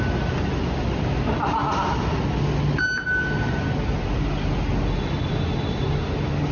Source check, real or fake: real